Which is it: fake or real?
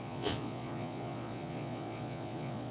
fake